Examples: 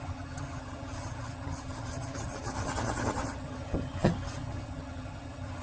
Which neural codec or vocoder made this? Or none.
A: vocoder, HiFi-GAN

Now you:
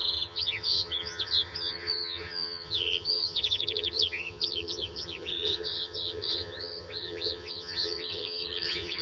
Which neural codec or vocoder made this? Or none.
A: vocoder, HiFi-GAN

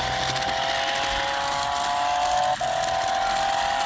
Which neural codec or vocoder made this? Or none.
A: none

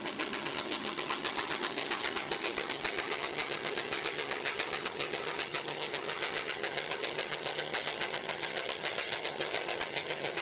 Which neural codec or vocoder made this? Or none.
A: vocoder, HiFi-GAN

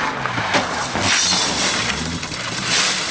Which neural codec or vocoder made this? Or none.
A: none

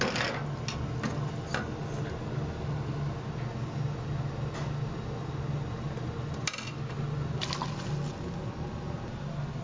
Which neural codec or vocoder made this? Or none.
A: none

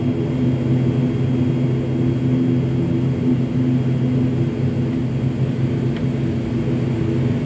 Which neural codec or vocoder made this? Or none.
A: none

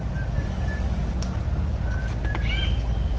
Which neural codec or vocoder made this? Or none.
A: none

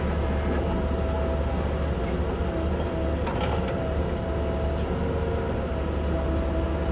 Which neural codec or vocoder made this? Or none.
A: none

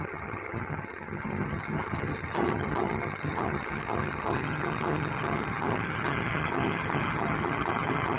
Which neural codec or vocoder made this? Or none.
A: vocoder, HiFi-GAN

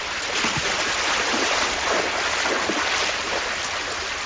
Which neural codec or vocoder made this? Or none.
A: none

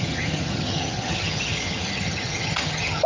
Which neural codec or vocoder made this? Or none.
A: vocoder, HiFi-GAN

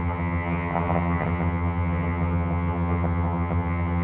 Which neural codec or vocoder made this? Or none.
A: vocoder, HiFi-GAN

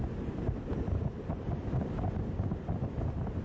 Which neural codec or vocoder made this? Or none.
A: none